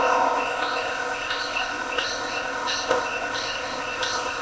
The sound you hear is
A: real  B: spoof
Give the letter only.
B